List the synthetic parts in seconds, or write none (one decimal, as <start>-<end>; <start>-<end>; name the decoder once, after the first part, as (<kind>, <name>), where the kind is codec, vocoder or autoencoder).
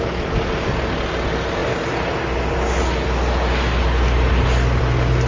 none